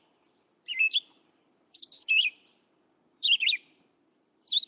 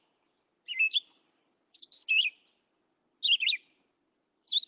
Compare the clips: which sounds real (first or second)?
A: second